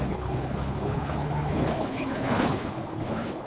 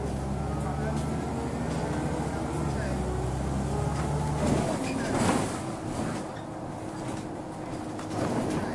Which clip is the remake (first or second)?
first